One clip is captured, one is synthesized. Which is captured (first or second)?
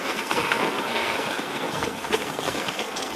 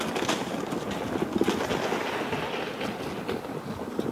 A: second